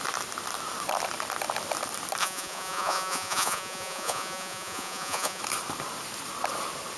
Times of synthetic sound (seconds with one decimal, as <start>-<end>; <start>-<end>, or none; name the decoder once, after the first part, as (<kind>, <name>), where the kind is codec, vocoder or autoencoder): 2.2-5.4 (vocoder, Vocos)